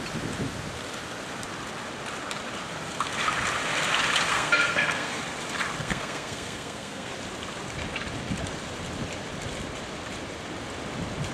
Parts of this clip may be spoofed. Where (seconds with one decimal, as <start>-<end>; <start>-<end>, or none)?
4.3-5.2; 5.8-7.1